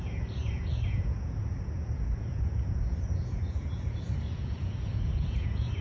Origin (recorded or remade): remade